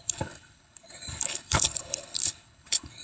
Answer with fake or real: fake